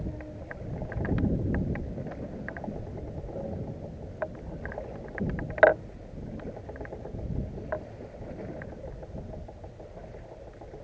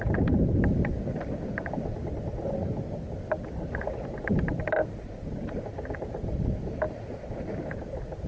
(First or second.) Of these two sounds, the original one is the first